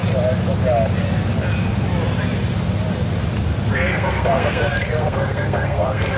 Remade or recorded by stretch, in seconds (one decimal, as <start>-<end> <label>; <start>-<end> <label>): 0.0-3.7 recorded; 3.7-6.2 remade